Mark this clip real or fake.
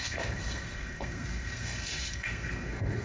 fake